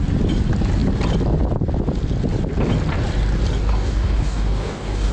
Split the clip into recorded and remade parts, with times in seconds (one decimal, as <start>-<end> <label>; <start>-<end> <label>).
0.0-3.7 recorded; 3.7-5.1 remade